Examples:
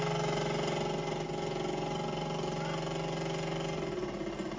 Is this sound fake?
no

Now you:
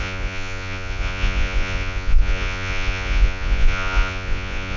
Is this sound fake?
yes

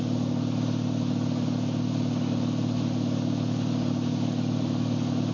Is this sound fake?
no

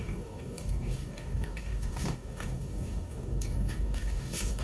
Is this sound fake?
yes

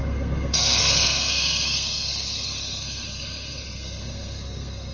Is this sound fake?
yes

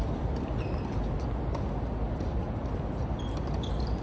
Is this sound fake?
no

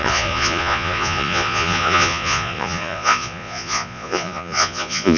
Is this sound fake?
yes